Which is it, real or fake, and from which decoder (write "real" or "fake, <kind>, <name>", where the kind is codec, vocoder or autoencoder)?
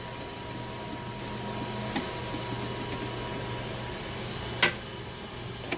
real